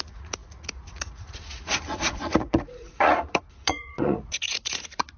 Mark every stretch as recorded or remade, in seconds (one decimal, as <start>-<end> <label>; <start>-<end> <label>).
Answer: 0.0-5.2 remade